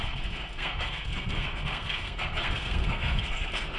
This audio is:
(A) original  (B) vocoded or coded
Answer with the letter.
B